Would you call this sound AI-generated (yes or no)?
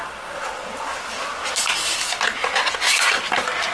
no